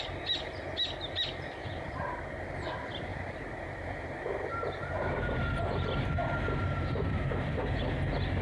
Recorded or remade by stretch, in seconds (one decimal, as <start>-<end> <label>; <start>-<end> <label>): 0.0-1.6 recorded; 1.6-2.2 remade; 2.2-3.1 recorded; 3.1-7.8 remade; 7.8-8.4 recorded